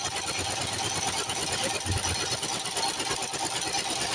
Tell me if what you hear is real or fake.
real